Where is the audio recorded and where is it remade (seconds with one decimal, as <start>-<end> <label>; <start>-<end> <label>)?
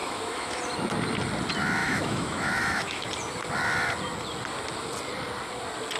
0.0-0.6 remade; 0.6-1.8 recorded; 1.8-3.1 remade; 3.1-6.0 recorded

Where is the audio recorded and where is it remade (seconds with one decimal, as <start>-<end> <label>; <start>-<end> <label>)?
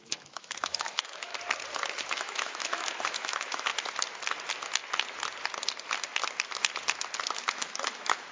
0.0-1.3 remade; 1.3-2.1 recorded; 2.1-3.7 remade; 3.7-7.3 recorded; 7.3-8.3 remade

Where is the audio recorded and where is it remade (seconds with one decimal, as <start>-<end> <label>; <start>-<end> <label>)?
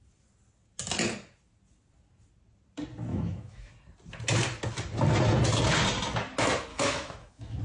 0.0-3.1 recorded; 3.1-3.7 remade; 3.7-6.7 recorded; 6.7-7.6 remade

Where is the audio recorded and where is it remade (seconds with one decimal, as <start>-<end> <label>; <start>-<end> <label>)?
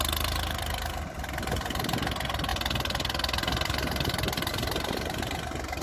0.0-5.8 recorded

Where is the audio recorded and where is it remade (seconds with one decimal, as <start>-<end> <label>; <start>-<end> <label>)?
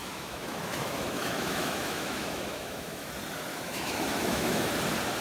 0.0-3.1 remade; 3.1-3.5 recorded; 3.5-4.7 remade; 4.7-5.2 recorded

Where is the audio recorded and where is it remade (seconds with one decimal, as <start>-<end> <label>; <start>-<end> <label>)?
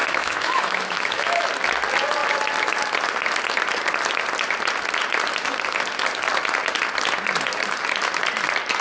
0.0-1.5 remade; 1.5-8.8 recorded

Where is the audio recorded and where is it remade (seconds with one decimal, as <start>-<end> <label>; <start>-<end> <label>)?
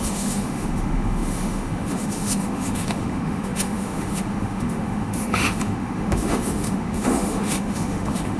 0.0-8.4 remade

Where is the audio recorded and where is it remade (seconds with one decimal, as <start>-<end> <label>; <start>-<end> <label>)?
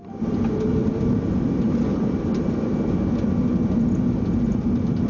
0.0-5.1 recorded